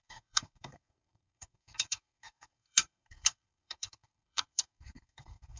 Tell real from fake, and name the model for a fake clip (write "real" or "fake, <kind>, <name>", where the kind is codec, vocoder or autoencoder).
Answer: fake, codec, SNAC